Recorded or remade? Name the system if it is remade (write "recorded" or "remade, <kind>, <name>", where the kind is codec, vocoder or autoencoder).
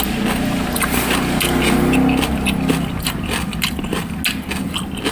recorded